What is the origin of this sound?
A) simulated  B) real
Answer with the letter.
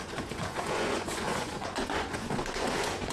A